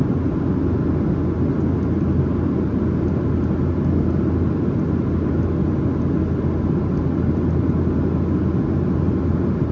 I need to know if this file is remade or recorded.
recorded